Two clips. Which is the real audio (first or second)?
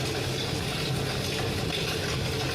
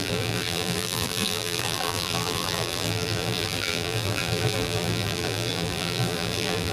first